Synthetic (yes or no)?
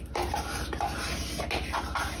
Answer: no